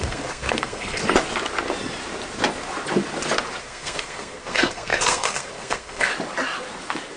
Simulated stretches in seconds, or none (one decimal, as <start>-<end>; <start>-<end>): 0.0-1.0; 3.6-6.1